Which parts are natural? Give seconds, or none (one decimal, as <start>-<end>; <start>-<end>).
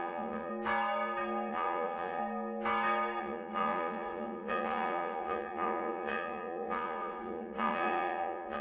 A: 0.5-1.5; 2.2-3.2